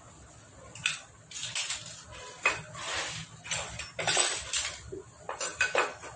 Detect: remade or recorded recorded